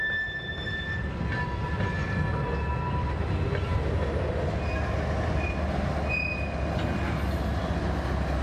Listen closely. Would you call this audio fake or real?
real